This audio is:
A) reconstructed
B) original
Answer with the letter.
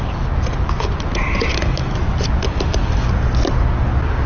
B